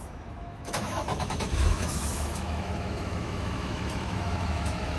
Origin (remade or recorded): remade